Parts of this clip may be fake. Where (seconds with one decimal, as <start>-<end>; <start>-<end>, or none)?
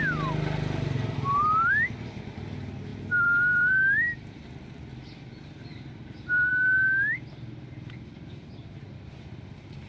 2.9-4.8; 5.7-6.5; 8.6-9.1